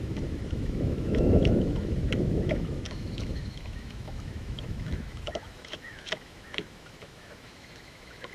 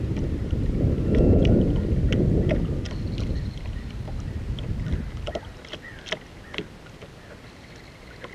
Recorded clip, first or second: second